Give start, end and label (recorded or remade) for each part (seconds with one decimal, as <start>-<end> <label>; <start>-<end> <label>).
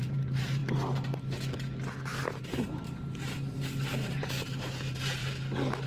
0.0-0.6 remade; 0.6-2.4 recorded; 2.4-5.2 remade; 5.2-5.9 recorded